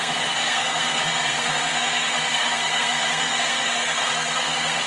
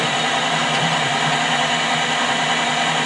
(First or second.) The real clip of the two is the second